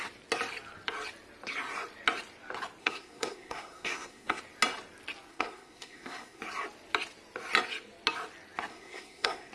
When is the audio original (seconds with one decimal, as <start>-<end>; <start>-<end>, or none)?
0.0-2.8; 4.4-5.3; 6.4-8.7